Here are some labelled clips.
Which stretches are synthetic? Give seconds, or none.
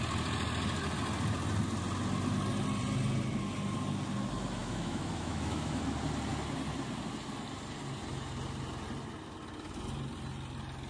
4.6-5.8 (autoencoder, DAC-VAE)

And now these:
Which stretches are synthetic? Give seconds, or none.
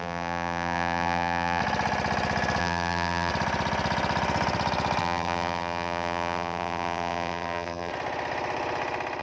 0.0-1.6 (vocoder, BigVGAN v2); 2.6-3.3; 5.0-7.9